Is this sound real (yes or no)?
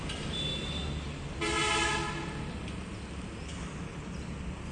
yes